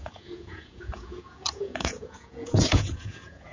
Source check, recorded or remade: remade